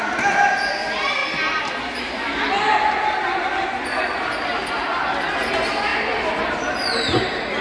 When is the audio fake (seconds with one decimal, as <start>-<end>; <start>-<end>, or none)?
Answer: none